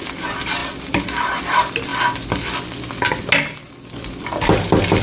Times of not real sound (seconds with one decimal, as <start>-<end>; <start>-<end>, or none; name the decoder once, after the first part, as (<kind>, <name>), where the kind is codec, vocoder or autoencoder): none